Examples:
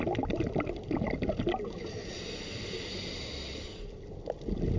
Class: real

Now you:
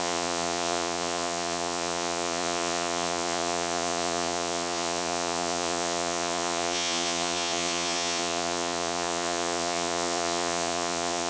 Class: fake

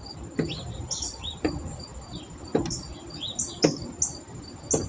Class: real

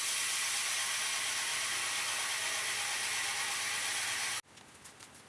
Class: real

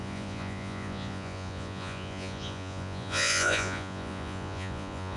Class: fake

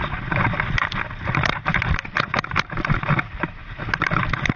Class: real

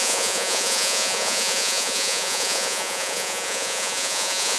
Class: fake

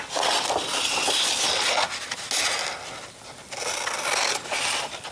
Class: real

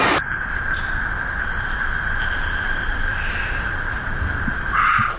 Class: real